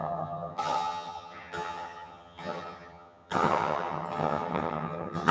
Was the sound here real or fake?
fake